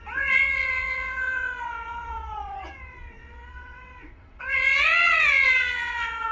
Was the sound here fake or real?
fake